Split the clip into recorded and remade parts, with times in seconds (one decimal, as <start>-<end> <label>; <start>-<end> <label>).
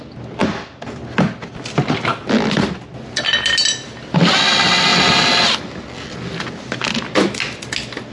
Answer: 0.0-8.1 recorded